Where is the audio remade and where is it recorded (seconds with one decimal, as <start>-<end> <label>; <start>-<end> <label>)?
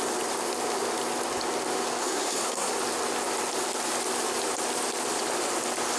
0.0-2.0 recorded; 2.0-2.7 remade; 2.7-6.0 recorded